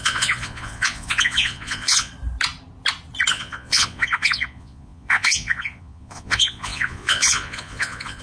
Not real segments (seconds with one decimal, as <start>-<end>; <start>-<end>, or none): 0.0-2.1; 3.3-8.2